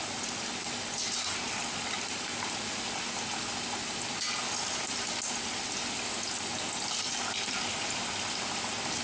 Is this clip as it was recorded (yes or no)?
yes